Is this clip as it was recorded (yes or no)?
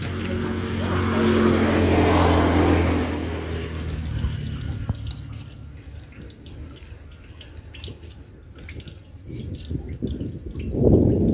yes